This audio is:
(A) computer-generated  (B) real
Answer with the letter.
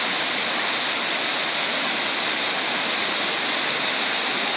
B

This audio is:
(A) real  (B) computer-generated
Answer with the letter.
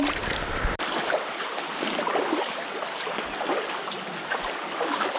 A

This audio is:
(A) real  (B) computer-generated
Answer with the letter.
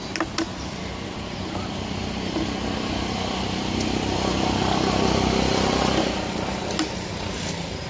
A